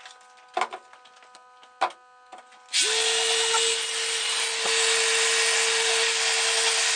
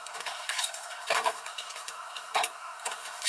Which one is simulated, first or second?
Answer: second